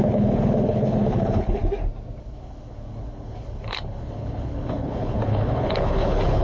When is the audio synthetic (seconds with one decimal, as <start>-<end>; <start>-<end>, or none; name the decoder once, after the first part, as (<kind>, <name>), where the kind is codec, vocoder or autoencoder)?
0.0-1.6 (codec, HILCodec); 2.2-6.4

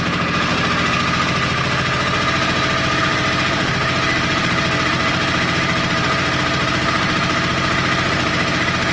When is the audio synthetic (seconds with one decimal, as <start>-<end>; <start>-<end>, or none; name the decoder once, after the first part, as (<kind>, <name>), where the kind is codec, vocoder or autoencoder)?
0.0-0.5 (vocoder, BigVGAN v2); 3.0-8.9

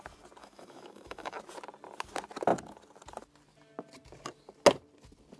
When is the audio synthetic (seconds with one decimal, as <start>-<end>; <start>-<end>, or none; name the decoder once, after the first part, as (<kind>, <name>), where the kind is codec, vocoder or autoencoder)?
0.4-1.4 (autoencoder, DAC-VAE)

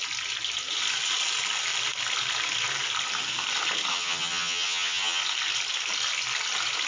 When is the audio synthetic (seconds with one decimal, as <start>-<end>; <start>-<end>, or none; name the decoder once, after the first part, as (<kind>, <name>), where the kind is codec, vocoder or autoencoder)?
3.9-5.2 (vocoder, HiFi-GAN)